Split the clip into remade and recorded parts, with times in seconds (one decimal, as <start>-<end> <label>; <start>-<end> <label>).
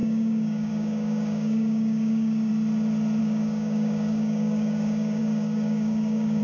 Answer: 0.0-2.5 remade; 2.5-3.2 recorded; 3.2-6.4 remade